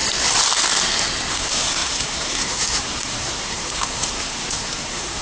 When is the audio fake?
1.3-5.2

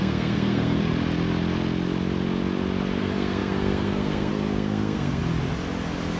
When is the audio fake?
0.0-0.9; 3.0-5.2

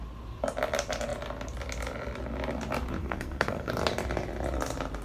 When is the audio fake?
3.0-3.7

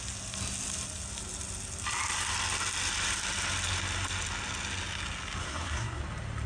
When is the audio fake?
5.4-6.0

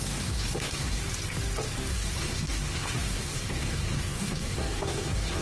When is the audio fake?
0.0-1.0; 1.9-5.4

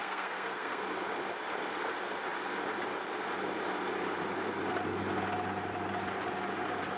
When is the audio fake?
0.0-0.8

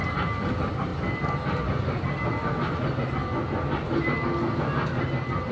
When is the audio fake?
none

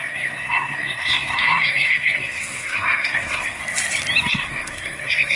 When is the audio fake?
0.0-3.6; 4.3-5.4